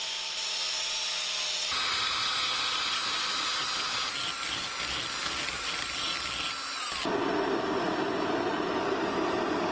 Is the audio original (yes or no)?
yes